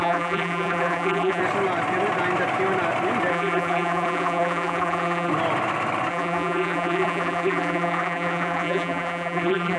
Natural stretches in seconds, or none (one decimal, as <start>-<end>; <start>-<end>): 1.4-3.3; 5.3-6.1